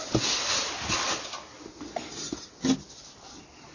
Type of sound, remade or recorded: recorded